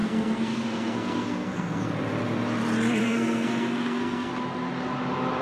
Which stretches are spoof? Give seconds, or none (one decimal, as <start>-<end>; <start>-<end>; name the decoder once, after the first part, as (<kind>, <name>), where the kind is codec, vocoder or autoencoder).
0.0-1.9 (codec, SNAC); 3.0-4.3